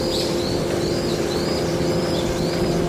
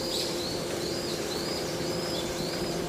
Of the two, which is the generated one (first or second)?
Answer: second